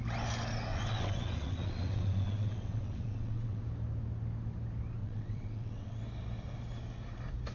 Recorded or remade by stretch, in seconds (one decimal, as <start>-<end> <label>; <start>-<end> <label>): 0.0-0.7 recorded; 0.7-3.6 remade; 3.6-5.0 recorded; 5.0-6.0 remade; 6.0-7.5 recorded